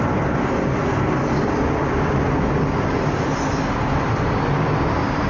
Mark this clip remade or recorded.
recorded